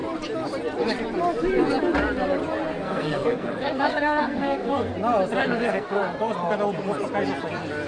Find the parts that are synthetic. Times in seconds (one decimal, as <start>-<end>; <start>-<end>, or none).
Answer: 2.7-4.9; 5.4-6.0